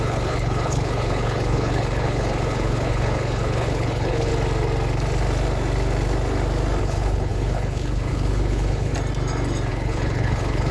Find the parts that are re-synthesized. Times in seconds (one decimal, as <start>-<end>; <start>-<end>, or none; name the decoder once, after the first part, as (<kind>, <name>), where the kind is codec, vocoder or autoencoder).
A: 0.0-4.3 (codec, HILCodec); 6.8-8.9; 9.7-10.7